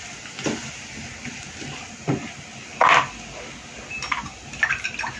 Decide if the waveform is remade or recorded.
recorded